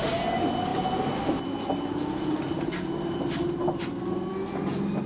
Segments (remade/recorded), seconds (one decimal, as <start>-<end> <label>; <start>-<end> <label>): 0.0-5.1 recorded